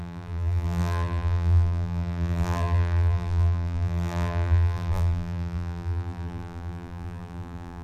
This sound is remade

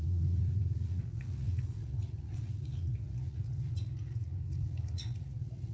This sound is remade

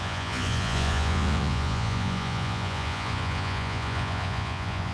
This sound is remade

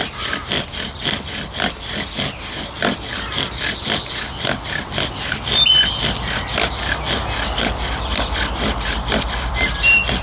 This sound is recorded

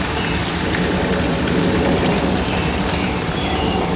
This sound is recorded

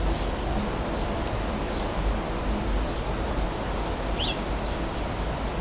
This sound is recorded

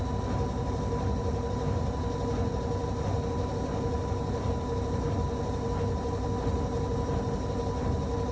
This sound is recorded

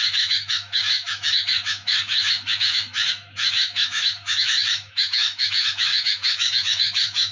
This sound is remade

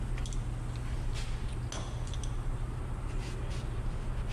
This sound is recorded